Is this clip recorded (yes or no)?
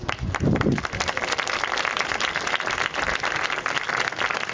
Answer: yes